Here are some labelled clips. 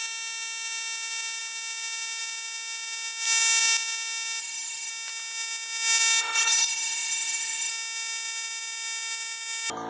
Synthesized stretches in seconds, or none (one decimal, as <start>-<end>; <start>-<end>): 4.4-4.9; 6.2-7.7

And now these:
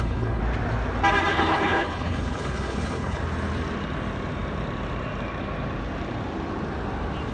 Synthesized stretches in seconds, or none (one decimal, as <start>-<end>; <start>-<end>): 0.0-0.4; 1.3-3.2

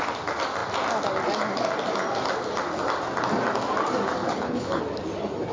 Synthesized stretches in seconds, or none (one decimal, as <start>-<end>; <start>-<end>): 4.2-4.8